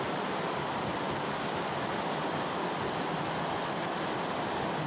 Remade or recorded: recorded